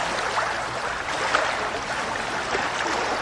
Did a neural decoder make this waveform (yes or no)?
no